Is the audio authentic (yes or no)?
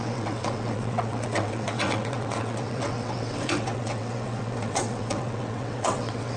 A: no